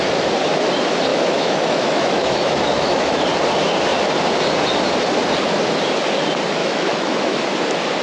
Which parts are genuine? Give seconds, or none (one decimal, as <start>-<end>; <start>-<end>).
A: 0.0-1.1; 3.2-6.6; 7.4-8.0